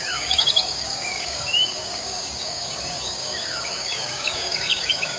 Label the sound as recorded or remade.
remade